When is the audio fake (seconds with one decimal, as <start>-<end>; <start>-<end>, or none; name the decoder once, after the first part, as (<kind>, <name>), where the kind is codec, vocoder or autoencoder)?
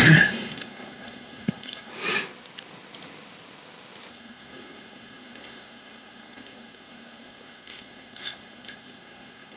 0.0-1.9 (codec, SNAC); 4.1-9.6